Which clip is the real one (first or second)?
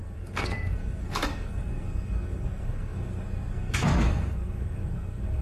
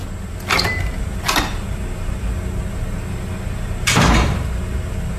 second